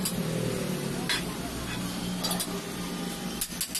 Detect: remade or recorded recorded